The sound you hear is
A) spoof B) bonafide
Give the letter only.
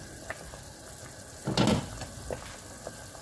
B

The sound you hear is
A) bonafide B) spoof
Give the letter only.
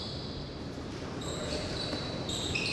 B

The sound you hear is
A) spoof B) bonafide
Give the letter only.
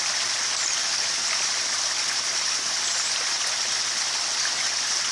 B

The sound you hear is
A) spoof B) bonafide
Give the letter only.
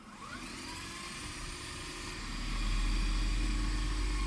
B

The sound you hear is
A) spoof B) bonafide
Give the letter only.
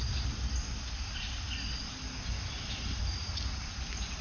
B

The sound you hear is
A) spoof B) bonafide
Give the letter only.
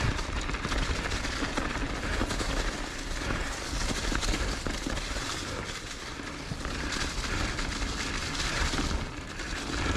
B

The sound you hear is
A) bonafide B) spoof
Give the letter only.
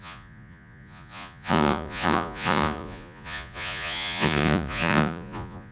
B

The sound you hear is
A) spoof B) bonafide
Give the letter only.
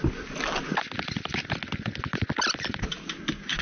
B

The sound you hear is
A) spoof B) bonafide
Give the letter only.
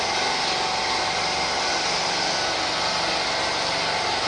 B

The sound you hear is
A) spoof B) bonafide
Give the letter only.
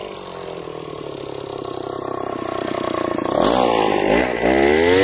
B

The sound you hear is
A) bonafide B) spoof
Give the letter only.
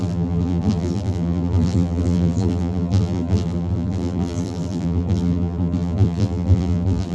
B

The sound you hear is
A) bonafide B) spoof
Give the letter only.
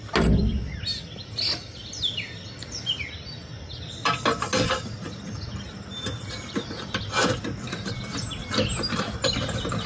A